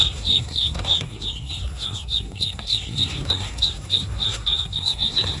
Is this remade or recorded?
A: remade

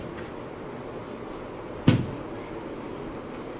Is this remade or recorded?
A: recorded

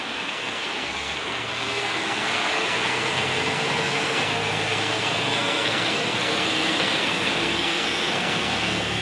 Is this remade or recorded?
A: remade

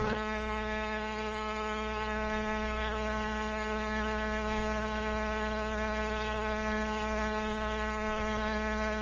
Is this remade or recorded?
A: remade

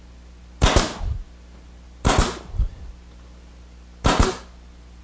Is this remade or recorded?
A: recorded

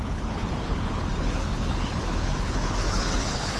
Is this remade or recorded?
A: remade